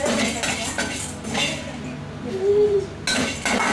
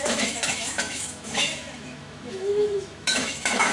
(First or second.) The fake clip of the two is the second